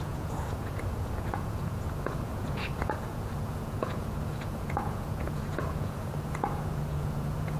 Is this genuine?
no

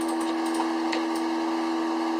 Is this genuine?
yes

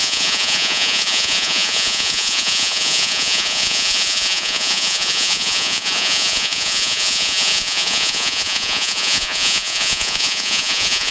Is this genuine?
no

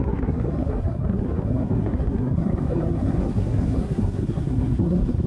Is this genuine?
no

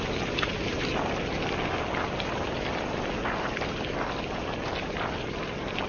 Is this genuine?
yes